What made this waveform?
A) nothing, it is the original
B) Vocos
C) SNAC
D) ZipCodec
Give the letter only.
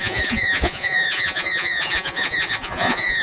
B